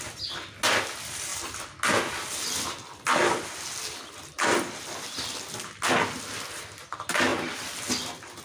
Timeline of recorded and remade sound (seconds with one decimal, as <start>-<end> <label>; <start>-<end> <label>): 0.0-8.4 recorded

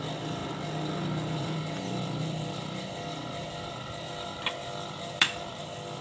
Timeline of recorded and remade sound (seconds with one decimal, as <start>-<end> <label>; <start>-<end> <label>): 0.0-0.4 remade; 0.4-1.3 recorded; 1.3-6.0 remade

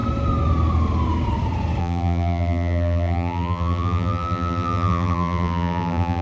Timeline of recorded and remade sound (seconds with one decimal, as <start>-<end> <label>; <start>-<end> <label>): 0.0-1.8 recorded; 1.8-6.2 remade

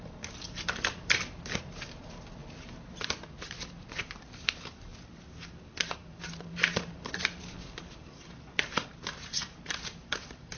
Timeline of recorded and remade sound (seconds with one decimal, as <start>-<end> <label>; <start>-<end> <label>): 0.0-2.4 remade; 2.4-3.0 recorded; 3.0-4.9 remade; 4.9-5.9 recorded; 5.9-10.6 remade